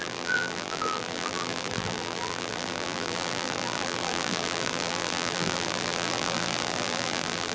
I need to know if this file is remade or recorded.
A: remade